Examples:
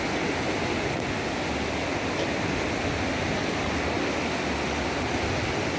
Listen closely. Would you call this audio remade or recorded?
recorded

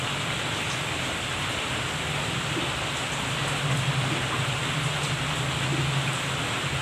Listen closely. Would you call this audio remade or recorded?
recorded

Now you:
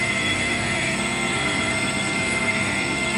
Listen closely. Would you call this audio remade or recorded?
remade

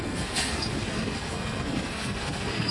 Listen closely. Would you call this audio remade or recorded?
remade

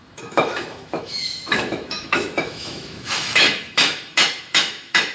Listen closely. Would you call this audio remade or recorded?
remade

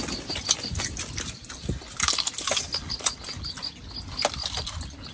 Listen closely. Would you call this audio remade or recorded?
recorded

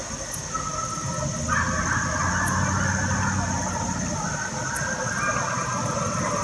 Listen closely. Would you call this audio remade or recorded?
recorded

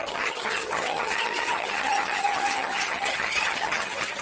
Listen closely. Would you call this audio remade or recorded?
remade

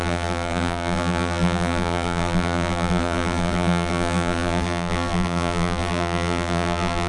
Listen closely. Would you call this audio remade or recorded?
remade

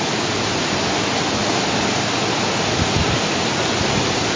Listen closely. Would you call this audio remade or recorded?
recorded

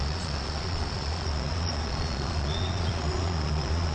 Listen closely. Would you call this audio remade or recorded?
remade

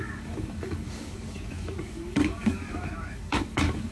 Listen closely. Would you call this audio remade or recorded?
remade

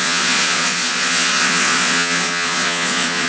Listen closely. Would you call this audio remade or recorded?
remade